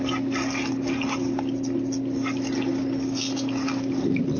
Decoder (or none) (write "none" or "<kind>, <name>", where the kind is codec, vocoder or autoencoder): none